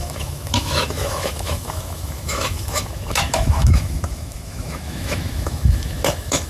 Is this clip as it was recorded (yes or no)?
no